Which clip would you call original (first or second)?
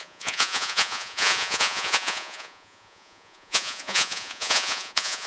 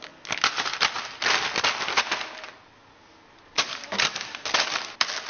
second